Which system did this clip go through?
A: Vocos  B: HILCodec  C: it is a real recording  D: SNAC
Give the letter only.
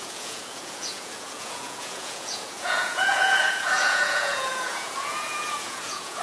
A